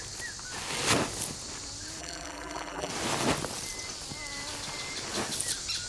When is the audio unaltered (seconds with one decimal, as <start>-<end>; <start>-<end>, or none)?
0.0-2.0; 2.9-5.9